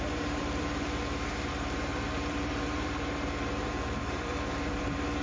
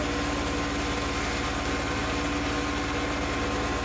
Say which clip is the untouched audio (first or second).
second